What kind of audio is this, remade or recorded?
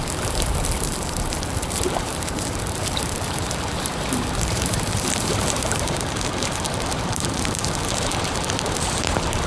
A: remade